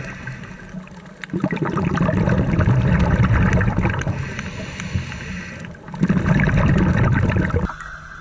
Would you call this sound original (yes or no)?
yes